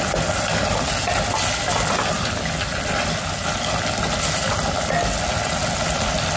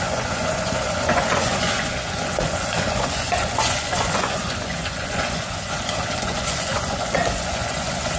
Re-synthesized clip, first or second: second